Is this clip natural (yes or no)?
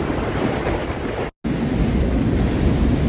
yes